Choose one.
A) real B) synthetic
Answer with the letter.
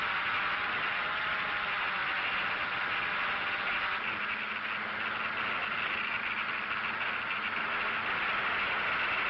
A